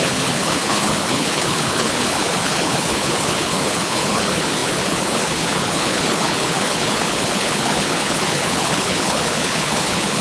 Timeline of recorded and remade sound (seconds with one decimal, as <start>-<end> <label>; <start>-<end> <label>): 0.0-10.2 remade